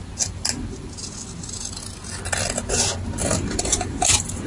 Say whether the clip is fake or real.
real